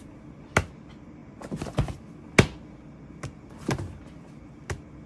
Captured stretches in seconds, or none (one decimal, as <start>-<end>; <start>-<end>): 0.0-5.1